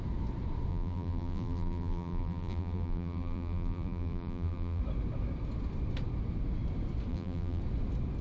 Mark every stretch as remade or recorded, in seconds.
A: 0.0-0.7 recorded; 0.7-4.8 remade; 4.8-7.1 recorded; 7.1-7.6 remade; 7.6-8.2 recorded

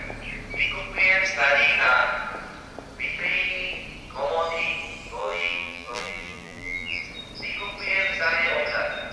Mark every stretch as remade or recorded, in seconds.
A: 0.0-5.2 recorded; 5.2-7.0 remade; 7.0-9.1 recorded

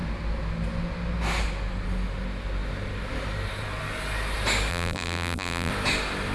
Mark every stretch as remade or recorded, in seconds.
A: 0.0-4.7 recorded; 4.7-5.7 remade; 5.7-6.3 recorded